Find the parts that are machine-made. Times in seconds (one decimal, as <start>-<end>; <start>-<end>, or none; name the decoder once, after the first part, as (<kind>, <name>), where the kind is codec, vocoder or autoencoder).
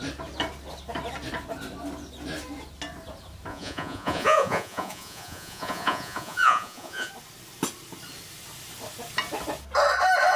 3.5-7.1 (vocoder, Vocos)